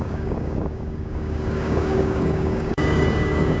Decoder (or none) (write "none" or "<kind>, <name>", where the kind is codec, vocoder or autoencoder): codec, DAC